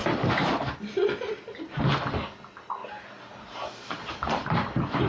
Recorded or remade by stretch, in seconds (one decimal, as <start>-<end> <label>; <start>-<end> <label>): 0.0-0.7 remade; 0.7-2.8 recorded; 2.8-4.1 remade; 4.1-5.1 recorded